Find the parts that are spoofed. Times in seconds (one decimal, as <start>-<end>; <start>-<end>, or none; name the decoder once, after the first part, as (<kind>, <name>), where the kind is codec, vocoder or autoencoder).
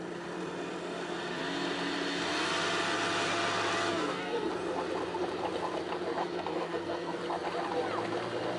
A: 3.9-4.5 (codec, SNAC); 6.2-7.2